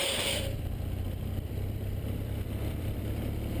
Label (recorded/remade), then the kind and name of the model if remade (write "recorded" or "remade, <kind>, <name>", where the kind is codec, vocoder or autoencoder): remade, vocoder, BigVGAN v2